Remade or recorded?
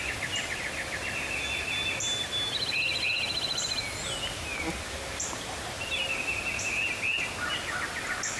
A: recorded